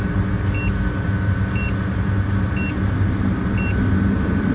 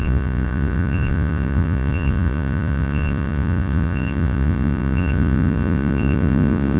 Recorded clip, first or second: first